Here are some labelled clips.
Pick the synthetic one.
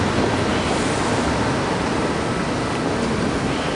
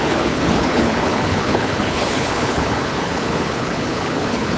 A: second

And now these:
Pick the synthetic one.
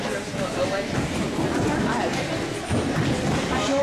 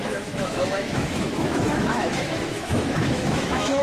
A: second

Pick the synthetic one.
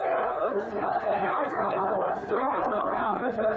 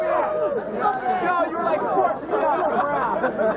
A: first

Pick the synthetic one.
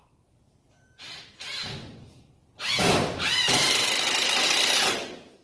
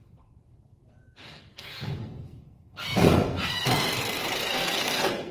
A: second